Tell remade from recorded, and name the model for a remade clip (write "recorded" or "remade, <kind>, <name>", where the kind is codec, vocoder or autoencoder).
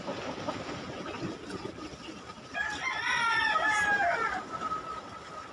recorded